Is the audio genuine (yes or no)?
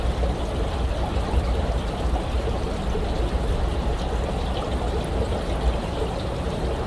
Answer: yes